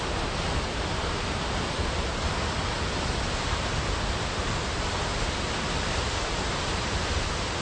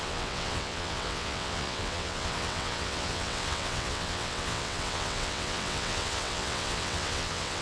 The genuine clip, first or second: first